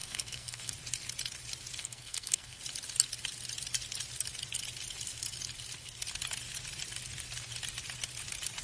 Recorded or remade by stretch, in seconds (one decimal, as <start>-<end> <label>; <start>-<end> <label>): 0.0-0.7 remade; 0.7-1.8 recorded; 1.8-2.6 remade; 2.6-8.6 recorded